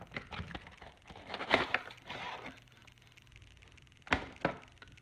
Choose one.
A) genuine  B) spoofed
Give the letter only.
A